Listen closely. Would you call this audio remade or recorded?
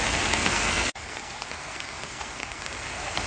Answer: remade